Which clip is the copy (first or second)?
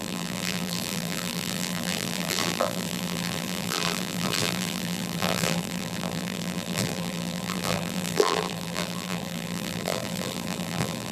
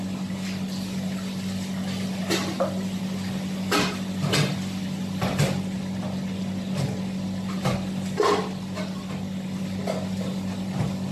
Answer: first